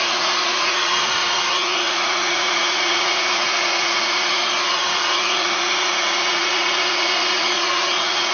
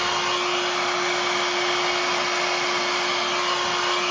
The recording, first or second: second